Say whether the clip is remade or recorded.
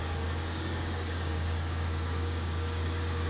remade